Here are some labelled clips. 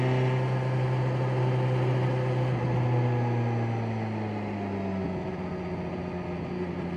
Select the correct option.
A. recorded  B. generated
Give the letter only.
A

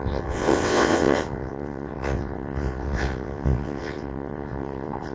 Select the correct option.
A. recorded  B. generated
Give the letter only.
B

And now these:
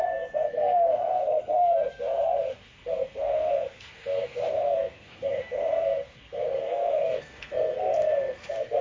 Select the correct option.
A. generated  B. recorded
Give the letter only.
A